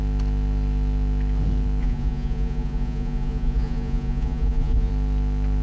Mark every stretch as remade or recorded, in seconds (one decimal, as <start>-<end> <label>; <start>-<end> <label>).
0.0-1.8 recorded; 1.8-4.9 remade; 4.9-5.6 recorded